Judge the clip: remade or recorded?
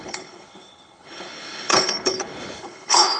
remade